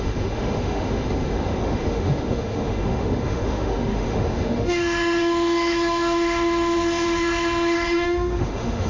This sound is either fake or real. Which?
fake